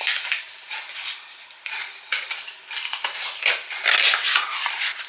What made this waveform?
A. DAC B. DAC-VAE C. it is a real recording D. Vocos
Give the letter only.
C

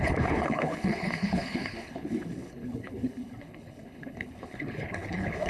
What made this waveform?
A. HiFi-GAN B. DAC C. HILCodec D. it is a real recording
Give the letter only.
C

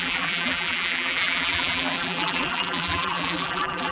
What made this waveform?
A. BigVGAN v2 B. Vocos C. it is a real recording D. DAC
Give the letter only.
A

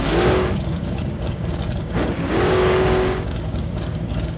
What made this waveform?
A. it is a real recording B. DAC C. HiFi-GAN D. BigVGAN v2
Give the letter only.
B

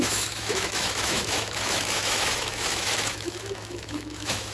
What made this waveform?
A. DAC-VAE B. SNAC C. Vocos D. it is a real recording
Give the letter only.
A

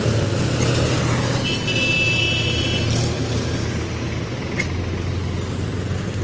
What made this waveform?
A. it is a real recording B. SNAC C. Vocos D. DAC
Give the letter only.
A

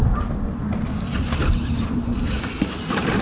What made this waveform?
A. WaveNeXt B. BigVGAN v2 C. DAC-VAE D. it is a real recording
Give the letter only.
D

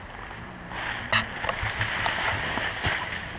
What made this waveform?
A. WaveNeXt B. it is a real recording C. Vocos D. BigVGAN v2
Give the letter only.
B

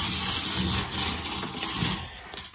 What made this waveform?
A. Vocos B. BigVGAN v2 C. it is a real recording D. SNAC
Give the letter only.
C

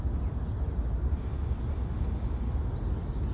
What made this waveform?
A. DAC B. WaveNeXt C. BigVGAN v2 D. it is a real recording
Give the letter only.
D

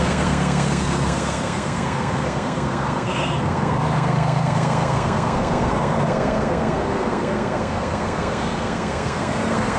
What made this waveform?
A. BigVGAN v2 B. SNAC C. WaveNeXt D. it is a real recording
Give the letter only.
B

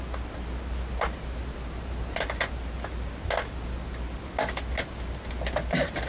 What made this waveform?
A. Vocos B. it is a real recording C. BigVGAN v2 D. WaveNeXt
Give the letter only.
B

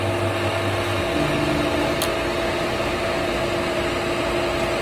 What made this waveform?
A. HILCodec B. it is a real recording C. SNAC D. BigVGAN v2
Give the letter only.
B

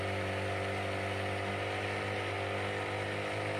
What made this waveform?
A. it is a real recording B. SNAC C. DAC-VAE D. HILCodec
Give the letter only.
A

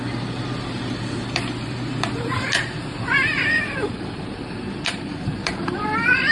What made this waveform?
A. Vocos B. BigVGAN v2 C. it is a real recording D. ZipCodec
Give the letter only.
B